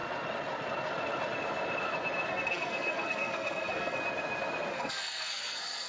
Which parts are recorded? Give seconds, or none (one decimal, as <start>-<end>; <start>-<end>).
0.0-2.3; 4.0-4.7